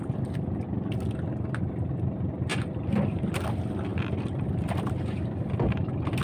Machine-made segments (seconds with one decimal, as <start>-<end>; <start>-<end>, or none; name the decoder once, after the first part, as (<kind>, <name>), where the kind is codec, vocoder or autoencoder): none